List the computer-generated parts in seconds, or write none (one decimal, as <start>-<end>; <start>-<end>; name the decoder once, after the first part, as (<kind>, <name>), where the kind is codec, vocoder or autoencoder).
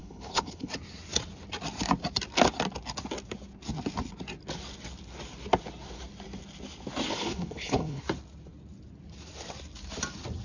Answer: 0.0-0.7 (codec, HILCodec); 7.1-8.0